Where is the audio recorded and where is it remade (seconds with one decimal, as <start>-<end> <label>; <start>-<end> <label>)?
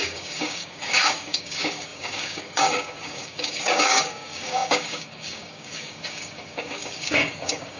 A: 0.0-7.8 remade